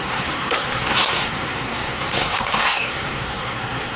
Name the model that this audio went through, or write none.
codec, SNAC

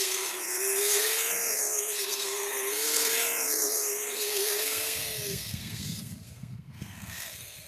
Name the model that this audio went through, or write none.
codec, SNAC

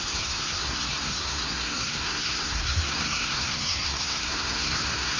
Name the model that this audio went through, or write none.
codec, SNAC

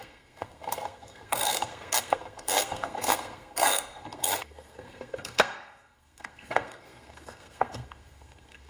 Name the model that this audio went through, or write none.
codec, SNAC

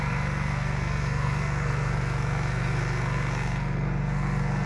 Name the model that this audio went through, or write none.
codec, SNAC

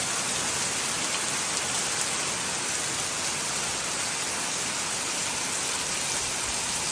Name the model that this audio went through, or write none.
none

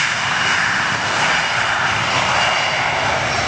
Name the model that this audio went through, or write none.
none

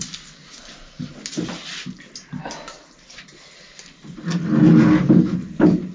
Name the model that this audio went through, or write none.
none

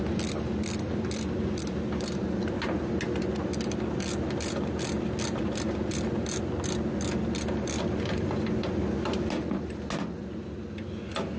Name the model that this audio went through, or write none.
none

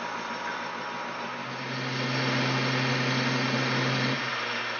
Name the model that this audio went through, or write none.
none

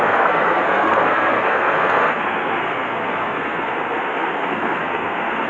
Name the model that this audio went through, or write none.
codec, SNAC